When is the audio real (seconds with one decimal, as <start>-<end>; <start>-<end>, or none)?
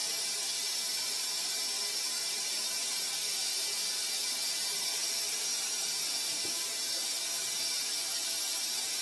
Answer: 0.0-9.0